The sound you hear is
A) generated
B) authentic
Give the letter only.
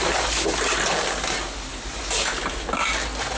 B